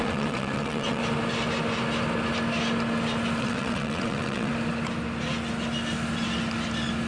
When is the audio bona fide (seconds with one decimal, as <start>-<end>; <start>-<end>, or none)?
1.0-3.4; 4.5-7.1